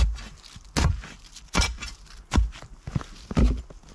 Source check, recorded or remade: recorded